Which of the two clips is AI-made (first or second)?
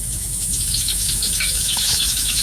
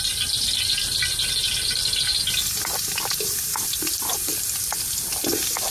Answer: first